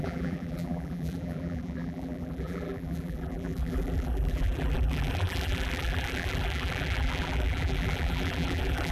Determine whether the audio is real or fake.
fake